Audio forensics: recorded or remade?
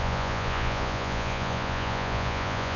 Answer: remade